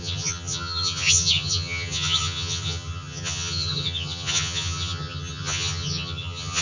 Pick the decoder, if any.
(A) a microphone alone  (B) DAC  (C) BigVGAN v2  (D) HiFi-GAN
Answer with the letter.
D